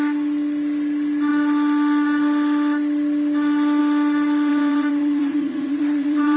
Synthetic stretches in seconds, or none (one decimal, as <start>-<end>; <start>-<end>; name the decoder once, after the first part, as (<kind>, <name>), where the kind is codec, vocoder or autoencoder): 4.5-6.4 (vocoder, Vocos)